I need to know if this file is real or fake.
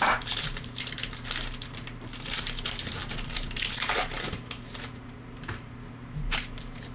fake